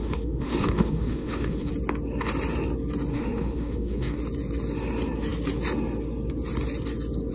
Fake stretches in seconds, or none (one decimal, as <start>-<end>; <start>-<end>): 0.0-1.7; 3.1-4.2